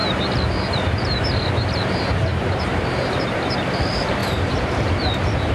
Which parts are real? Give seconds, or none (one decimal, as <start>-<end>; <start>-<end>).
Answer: 0.0-0.9